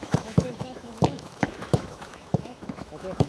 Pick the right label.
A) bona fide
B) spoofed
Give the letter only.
B